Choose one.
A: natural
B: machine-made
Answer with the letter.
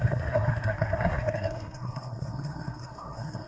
B